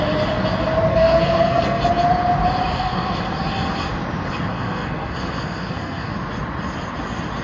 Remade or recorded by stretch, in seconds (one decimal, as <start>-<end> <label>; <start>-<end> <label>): 0.0-0.9 recorded; 0.9-1.8 remade; 1.8-2.7 recorded; 2.7-3.2 remade; 3.2-4.5 recorded; 4.5-6.1 remade; 6.1-7.4 recorded